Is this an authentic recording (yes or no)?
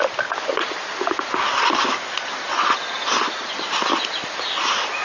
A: yes